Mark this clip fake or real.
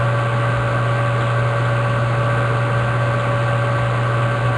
real